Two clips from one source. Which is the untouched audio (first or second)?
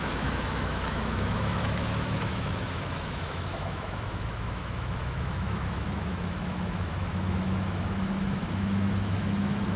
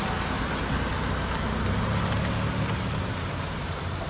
second